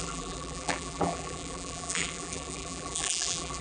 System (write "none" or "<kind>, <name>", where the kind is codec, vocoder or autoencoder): vocoder, BigVGAN v2